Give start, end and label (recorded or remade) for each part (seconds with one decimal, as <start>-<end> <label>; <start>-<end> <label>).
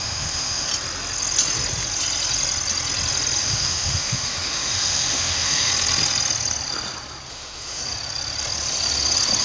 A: 0.0-0.7 remade; 0.7-3.4 recorded; 3.4-5.7 remade; 5.7-7.3 recorded; 7.3-7.8 remade; 7.8-9.4 recorded